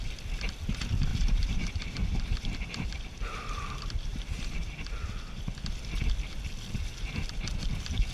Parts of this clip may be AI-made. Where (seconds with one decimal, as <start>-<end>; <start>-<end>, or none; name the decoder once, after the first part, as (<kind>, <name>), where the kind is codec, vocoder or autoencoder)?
1.1-5.4 (vocoder, BigVGAN v2)

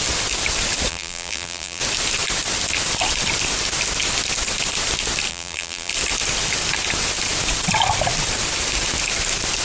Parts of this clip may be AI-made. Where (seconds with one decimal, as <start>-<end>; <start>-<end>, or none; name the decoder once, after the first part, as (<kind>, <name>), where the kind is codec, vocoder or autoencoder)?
0.9-1.8 (vocoder, BigVGAN v2); 5.3-5.9